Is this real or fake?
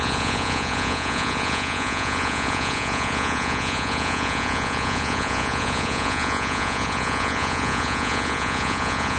fake